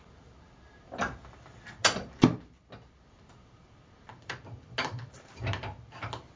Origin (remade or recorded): recorded